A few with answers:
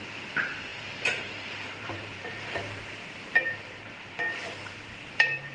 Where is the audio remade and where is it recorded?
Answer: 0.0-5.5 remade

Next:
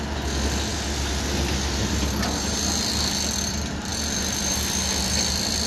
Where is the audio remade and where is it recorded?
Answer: 0.0-5.7 recorded

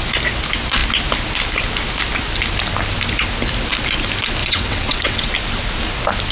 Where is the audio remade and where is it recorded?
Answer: 0.0-4.4 recorded; 4.4-5.3 remade; 5.3-6.3 recorded

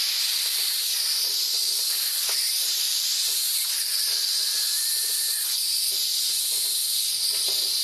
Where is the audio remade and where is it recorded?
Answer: 0.0-7.8 recorded

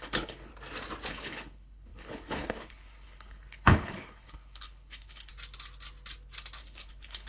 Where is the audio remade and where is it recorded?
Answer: 0.0-0.5 remade; 0.5-1.1 recorded; 1.1-5.3 remade; 5.3-6.6 recorded; 6.6-7.3 remade

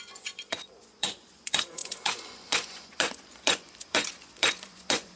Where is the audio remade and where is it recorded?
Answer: 0.0-5.2 remade

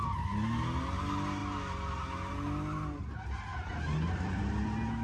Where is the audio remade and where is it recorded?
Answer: 0.0-5.0 recorded

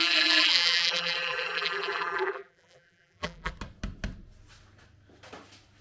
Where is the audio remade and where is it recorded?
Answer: 0.0-3.5 remade; 3.5-5.8 recorded